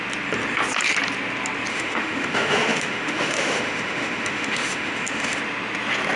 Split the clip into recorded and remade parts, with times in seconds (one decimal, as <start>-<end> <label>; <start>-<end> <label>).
0.0-1.7 recorded; 1.7-5.4 remade; 5.4-6.2 recorded